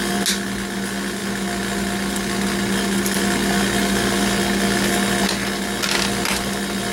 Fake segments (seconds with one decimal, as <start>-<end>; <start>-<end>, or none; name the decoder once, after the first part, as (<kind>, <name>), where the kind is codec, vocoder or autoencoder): none